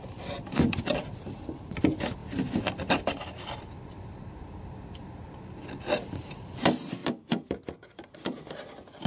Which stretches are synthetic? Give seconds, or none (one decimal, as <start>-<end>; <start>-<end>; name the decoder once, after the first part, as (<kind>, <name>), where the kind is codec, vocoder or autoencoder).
0.0-2.2 (vocoder, BigVGAN v2); 2.7-9.1